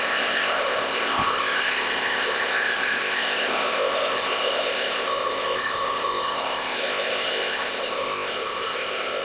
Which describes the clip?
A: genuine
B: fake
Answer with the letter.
B